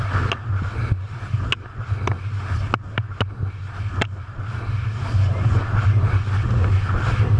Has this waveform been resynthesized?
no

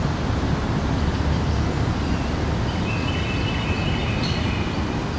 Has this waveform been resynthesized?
no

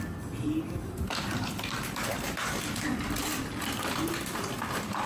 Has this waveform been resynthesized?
yes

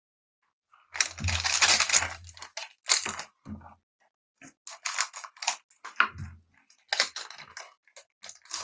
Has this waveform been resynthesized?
no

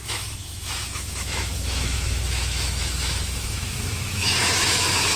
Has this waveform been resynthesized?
yes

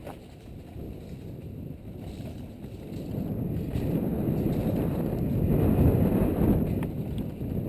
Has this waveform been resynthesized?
no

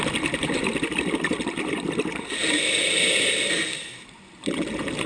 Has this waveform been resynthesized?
no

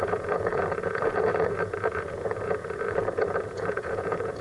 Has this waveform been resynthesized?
yes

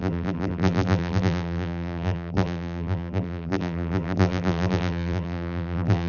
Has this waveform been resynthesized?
yes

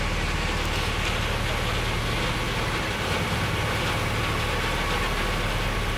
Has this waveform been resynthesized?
no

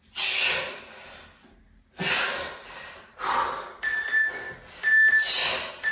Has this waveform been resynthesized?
no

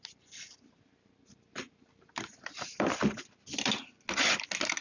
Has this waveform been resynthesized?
no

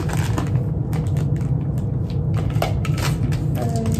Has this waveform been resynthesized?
no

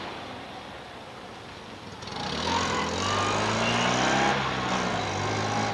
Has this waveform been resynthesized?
no